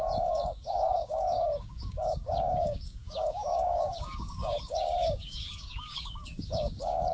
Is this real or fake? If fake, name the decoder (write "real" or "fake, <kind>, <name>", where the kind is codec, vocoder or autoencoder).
fake, codec, DAC